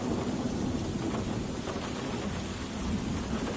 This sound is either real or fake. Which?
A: real